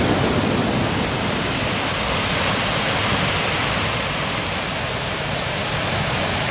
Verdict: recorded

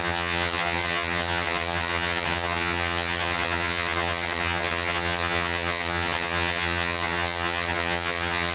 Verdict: remade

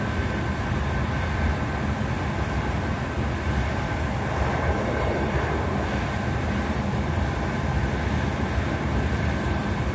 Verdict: recorded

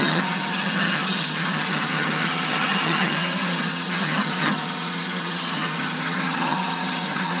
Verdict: remade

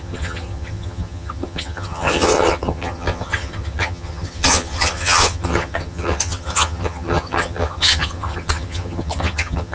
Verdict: remade